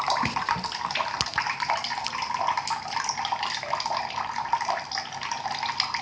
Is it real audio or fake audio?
real